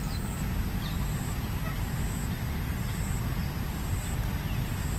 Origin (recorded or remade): recorded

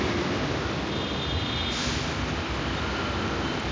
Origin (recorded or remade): recorded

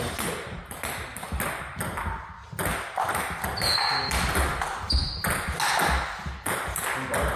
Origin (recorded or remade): recorded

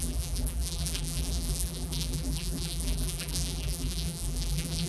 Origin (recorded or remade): remade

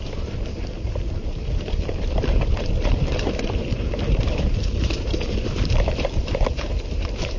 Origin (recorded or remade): remade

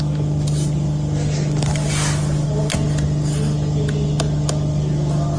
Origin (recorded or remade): recorded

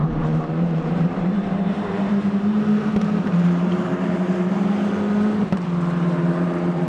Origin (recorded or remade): remade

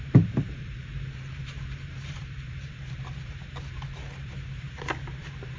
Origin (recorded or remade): remade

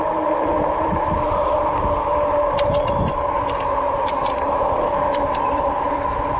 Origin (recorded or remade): remade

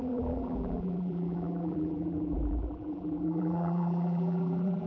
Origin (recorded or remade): remade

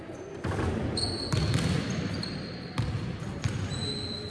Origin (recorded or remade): recorded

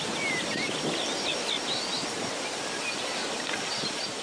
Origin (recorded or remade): recorded